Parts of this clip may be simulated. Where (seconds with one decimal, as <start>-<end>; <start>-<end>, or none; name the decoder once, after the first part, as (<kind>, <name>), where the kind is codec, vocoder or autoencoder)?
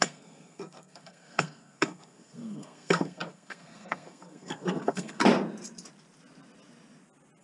0.0-5.2 (codec, SNAC)